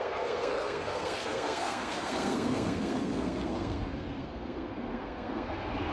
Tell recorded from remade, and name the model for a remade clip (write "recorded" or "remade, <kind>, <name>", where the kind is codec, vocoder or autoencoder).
remade, codec, SNAC